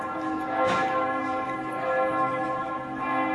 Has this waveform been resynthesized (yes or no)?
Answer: no